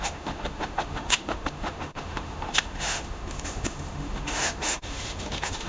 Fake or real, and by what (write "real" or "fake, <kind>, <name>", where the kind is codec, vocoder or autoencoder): fake, autoencoder, DAC-VAE